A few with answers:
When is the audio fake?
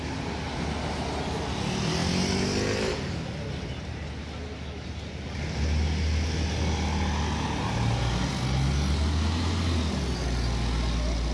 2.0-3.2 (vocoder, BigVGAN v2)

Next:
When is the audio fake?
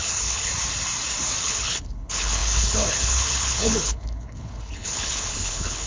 0.0-0.5 (codec, HILCodec); 1.4-5.9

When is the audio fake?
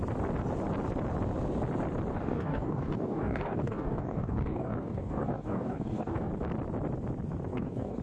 2.1-6.3 (codec, DAC); 7.5-8.0